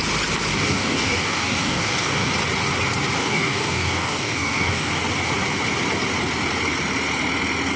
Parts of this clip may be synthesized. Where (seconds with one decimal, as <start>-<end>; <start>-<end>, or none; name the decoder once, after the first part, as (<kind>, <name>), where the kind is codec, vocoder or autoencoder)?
0.5-2.3 (codec, DAC); 3.2-4.9